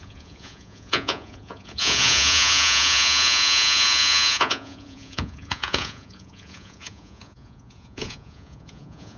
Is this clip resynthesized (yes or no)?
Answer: yes